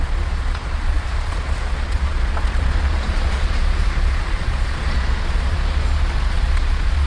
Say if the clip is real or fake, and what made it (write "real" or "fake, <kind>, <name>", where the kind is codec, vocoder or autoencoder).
fake, vocoder, Vocos